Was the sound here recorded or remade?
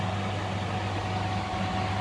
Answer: recorded